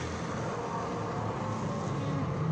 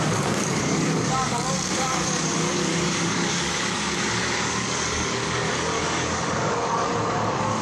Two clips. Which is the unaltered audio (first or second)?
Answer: first